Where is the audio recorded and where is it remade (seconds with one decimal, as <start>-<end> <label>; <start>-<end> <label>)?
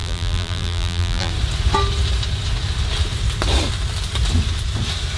0.0-1.3 remade; 1.3-5.2 recorded